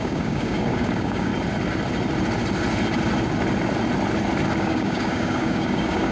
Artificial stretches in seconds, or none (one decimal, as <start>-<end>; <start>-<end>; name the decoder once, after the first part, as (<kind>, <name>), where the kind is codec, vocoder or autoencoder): 0.0-1.3 (codec, DAC); 4.6-6.1